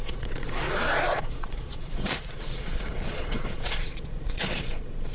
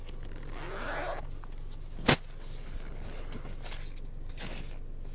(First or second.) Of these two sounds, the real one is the second